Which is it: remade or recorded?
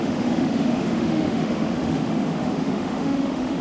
remade